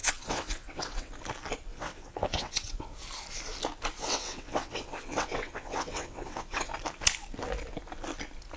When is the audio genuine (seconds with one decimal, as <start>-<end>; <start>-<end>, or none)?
1.1-1.7; 3.0-4.0; 6.7-8.6